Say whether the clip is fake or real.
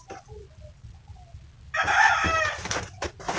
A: real